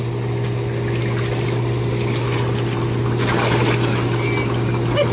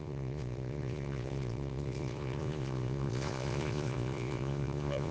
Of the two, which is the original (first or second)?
first